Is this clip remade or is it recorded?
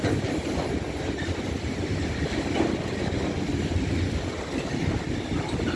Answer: recorded